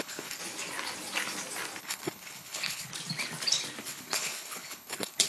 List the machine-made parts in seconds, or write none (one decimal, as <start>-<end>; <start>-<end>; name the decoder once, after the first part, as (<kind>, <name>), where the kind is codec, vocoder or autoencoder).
0.0-0.4 (codec, HILCodec); 1.8-2.9; 3.8-5.3